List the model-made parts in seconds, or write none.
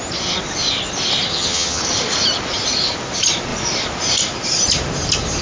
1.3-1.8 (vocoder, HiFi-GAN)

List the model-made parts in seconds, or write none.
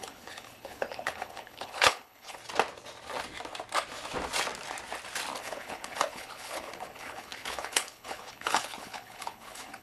0.0-2.4 (codec, HILCodec); 5.4-9.8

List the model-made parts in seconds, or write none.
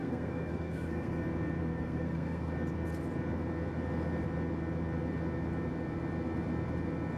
0.0-1.2 (codec, SNAC); 1.6-2.5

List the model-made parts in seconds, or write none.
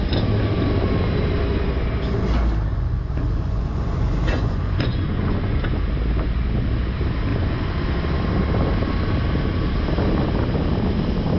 2.7-5.9 (vocoder, Vocos); 7.3-7.8